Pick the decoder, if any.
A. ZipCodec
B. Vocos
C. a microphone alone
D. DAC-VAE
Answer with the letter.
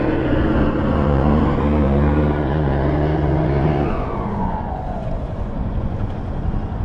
B